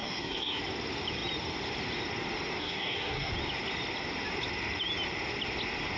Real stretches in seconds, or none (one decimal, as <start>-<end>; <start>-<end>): 0.6-2.6; 3.3-6.0